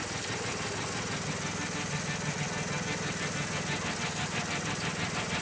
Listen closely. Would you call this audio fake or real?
real